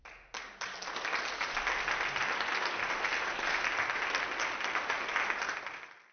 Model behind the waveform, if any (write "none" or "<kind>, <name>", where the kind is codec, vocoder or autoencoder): none